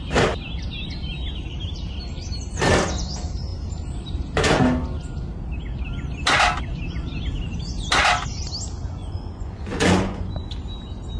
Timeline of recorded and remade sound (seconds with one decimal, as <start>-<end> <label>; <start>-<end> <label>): 0.0-9.0 recorded; 9.0-10.5 remade; 10.5-11.2 recorded